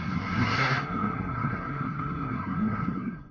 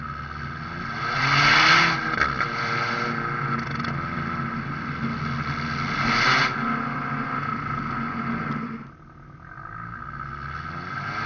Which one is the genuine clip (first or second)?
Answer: second